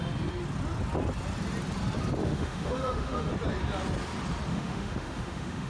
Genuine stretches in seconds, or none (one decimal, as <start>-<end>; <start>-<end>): 0.0-2.2; 3.3-4.5